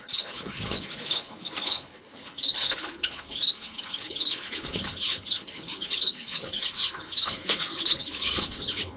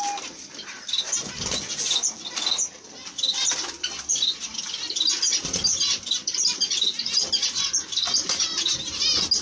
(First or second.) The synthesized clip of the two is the first